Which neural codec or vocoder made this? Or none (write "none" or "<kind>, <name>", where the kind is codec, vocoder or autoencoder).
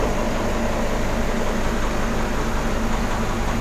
none